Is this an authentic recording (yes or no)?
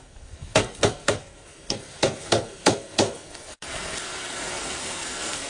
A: no